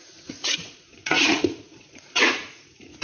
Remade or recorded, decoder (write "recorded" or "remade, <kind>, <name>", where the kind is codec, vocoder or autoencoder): remade, vocoder, Vocos